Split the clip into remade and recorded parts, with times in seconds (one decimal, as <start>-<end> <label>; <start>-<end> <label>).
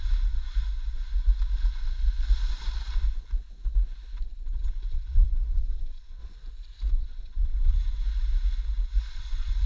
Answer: 0.0-0.5 remade; 0.5-4.2 recorded; 4.2-6.2 remade; 6.2-6.9 recorded; 6.9-8.0 remade; 8.0-9.1 recorded; 9.1-9.7 remade